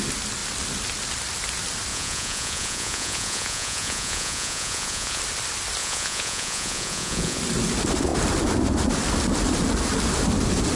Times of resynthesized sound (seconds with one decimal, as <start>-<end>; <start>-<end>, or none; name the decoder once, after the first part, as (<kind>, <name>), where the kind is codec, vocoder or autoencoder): 1.9-5.2 (vocoder, Vocos); 5.8-7.4